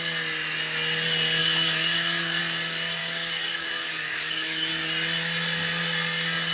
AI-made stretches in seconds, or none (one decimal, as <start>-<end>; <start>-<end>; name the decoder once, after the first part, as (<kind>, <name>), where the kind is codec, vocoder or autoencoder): 1.4-2.4 (codec, DAC); 3.0-4.7